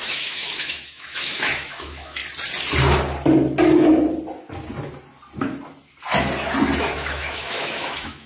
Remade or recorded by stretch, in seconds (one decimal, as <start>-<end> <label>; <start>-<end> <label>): 0.0-2.2 remade; 2.2-6.8 recorded; 6.8-8.3 remade